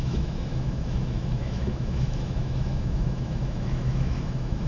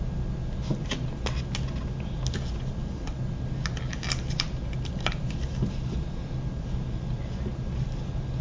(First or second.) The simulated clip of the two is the first